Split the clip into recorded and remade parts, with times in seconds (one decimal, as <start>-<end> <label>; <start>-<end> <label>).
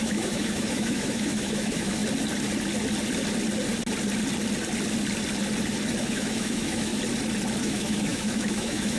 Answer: 0.0-2.0 remade; 2.0-6.0 recorded; 6.0-6.9 remade; 6.9-7.6 recorded; 7.6-9.0 remade